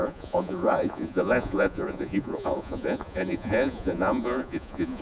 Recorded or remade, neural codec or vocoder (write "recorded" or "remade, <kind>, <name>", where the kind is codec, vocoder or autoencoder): remade, vocoder, Vocos